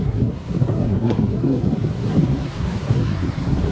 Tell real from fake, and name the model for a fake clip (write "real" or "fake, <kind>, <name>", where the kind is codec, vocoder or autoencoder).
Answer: fake, codec, SNAC